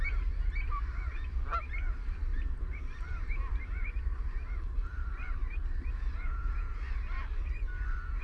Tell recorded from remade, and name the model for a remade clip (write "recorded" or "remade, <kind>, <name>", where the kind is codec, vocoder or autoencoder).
recorded